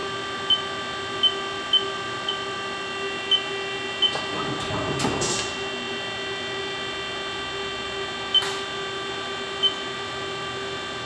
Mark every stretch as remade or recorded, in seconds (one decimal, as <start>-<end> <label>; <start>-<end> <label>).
0.0-11.1 recorded

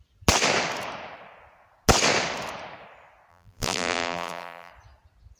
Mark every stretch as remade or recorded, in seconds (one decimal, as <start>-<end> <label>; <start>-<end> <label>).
0.0-3.3 recorded; 3.3-4.7 remade; 4.7-5.4 recorded

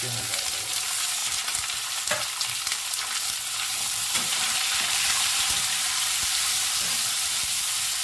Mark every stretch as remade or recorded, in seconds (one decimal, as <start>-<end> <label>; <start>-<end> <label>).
0.0-1.2 recorded; 1.2-2.1 remade; 2.1-3.7 recorded; 3.7-6.9 remade; 6.9-8.0 recorded

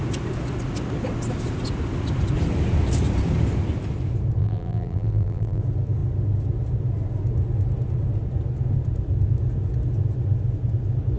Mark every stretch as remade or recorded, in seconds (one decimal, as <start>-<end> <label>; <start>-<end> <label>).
0.0-4.4 recorded; 4.4-5.6 remade; 5.6-11.2 recorded